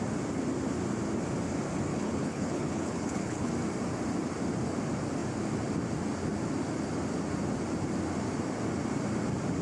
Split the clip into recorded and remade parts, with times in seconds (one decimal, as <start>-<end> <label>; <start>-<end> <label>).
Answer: 0.0-1.9 recorded; 1.9-3.5 remade; 3.5-9.6 recorded